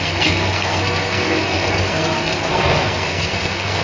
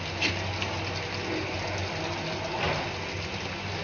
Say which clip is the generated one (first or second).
first